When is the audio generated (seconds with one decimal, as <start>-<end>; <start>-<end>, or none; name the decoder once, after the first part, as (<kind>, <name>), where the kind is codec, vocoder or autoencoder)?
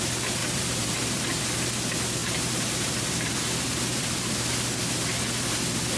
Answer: 0.4-1.4 (vocoder, BigVGAN v2); 2.2-4.1